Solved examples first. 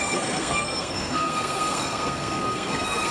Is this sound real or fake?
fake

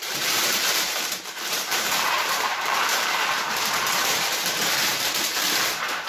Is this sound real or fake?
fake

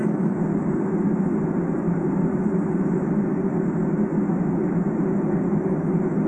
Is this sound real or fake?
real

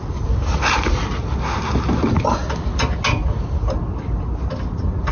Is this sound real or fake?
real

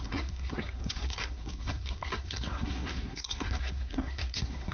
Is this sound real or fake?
fake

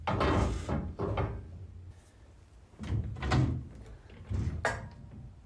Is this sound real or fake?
real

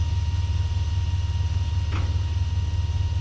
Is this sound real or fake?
real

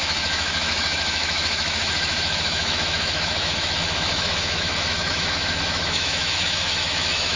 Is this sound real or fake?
fake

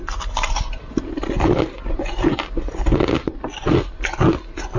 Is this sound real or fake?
real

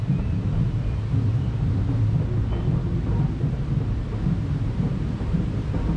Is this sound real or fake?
real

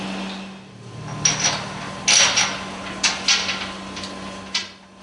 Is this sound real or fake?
real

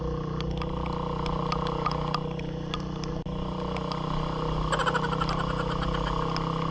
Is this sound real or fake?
real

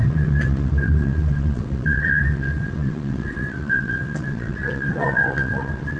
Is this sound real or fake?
fake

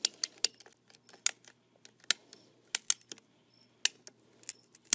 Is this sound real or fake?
real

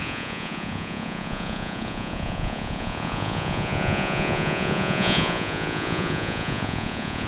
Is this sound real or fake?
fake